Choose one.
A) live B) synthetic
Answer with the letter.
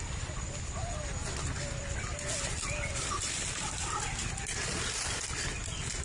A